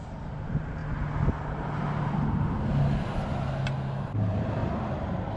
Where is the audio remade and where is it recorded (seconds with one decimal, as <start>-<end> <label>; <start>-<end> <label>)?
0.0-0.8 remade; 0.8-4.0 recorded; 4.0-5.4 remade